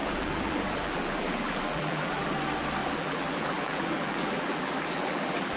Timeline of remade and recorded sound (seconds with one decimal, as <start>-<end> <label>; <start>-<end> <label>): 0.0-2.3 remade; 2.3-2.8 recorded; 2.8-5.6 remade